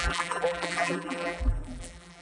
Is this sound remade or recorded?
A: remade